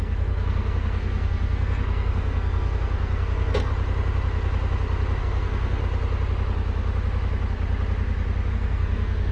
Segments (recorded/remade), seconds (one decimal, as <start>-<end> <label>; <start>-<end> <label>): 0.0-3.7 remade; 3.7-5.2 recorded; 5.2-5.8 remade; 5.8-8.5 recorded; 8.5-9.3 remade